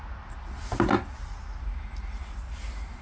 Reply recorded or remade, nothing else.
recorded